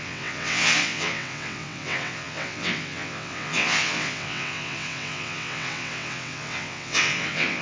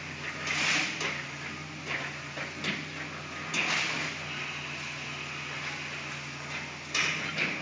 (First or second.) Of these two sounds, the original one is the second